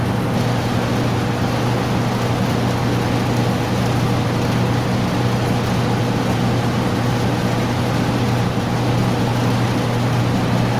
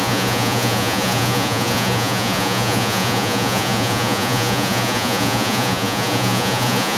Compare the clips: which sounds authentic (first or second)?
first